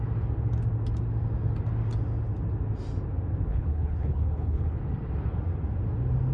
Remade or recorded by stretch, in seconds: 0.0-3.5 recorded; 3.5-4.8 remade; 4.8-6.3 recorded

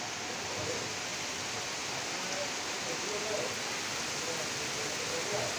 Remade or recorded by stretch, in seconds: 0.0-5.6 recorded

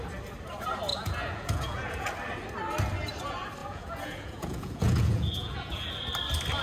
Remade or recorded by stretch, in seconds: 0.0-0.9 recorded; 0.9-2.1 remade; 2.1-3.6 recorded; 3.6-5.9 remade; 5.9-6.6 recorded

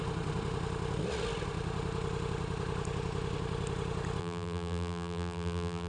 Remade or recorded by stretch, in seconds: 0.0-4.2 recorded; 4.2-5.9 remade

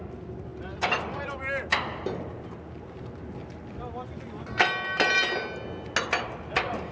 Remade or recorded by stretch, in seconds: 0.0-6.9 recorded

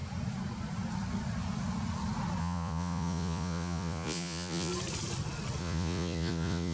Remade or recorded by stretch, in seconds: 0.0-2.4 recorded; 2.4-4.7 remade; 4.7-5.6 recorded; 5.6-6.7 remade

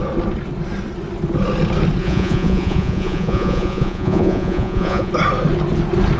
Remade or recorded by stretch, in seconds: 0.0-2.0 recorded; 2.0-5.1 remade; 5.1-6.2 recorded